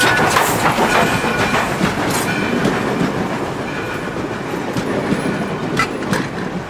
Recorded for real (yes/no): yes